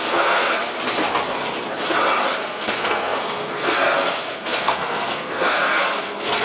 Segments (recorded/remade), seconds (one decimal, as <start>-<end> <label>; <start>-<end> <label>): 0.0-0.6 remade; 0.6-2.4 recorded; 2.4-6.4 remade